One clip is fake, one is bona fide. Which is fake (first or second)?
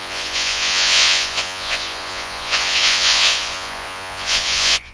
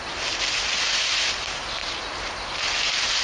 first